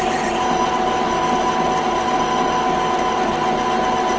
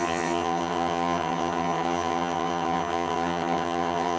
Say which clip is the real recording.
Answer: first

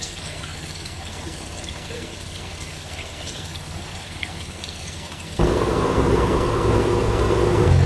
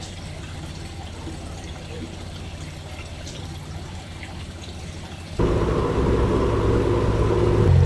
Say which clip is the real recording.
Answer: second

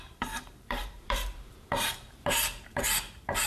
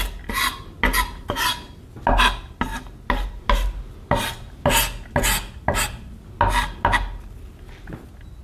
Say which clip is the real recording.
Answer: second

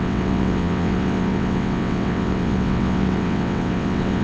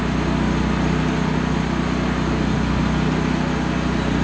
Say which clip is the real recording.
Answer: second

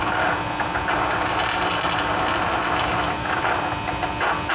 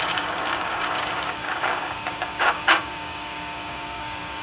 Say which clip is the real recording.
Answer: first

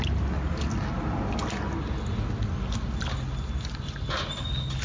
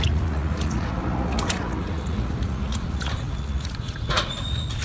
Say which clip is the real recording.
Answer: first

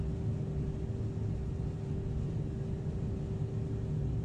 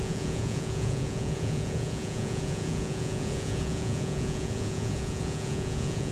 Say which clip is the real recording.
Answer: first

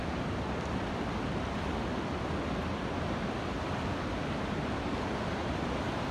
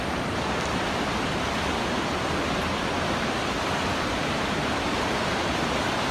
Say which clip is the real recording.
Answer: first